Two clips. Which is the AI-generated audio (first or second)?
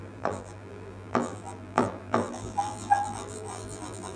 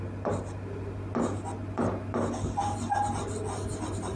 first